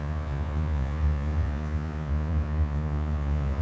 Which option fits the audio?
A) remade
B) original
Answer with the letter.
A